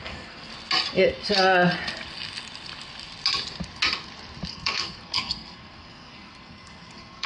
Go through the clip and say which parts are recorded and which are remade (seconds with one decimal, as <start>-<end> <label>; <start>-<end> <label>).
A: 0.0-0.5 remade; 0.5-4.5 recorded; 4.5-7.3 remade